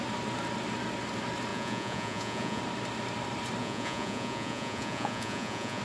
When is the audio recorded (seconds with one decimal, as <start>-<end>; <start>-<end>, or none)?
0.0-1.5; 2.6-3.6